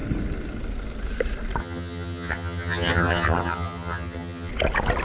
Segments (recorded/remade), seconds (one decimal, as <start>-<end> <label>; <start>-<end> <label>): 0.0-1.6 recorded; 1.6-4.5 remade; 4.5-5.0 recorded